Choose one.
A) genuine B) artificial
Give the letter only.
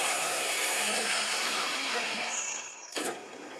B